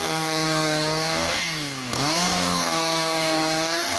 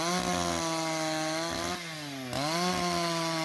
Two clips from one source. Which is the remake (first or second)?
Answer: first